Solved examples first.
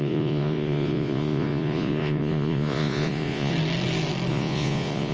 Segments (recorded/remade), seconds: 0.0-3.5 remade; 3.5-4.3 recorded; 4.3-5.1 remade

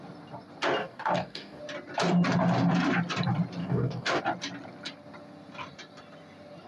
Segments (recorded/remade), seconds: 0.0-0.8 recorded; 0.8-1.6 remade; 1.6-3.6 recorded; 3.6-4.2 remade; 4.2-6.7 recorded